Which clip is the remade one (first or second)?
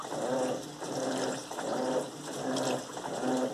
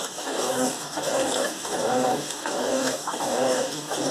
second